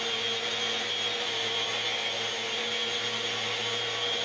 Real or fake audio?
real